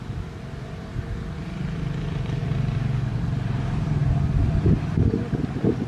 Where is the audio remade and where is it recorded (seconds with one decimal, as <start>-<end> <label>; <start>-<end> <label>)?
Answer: 0.0-5.9 remade